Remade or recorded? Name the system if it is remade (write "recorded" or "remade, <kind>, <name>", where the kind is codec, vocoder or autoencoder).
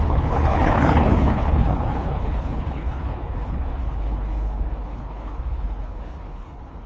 remade, codec, HILCodec